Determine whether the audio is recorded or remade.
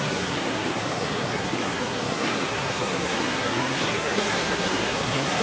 remade